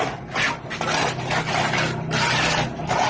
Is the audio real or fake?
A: real